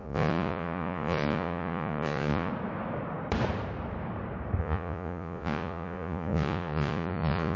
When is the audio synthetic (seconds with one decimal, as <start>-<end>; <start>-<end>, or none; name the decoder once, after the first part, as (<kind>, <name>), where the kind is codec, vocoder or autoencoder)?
0.0-2.5 (vocoder, Vocos); 4.6-7.6